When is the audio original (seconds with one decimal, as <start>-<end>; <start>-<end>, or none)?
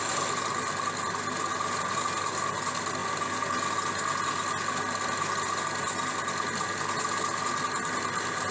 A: 0.0-8.5